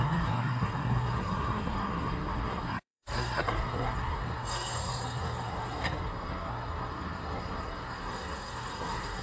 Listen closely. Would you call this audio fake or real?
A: fake